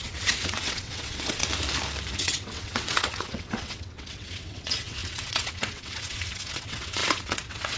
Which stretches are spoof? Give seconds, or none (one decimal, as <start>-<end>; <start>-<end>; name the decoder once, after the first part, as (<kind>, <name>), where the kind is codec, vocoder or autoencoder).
0.0-1.4 (vocoder, WaveNeXt); 2.2-7.8